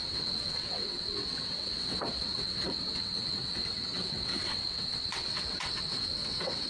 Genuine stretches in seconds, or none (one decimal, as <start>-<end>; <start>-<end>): none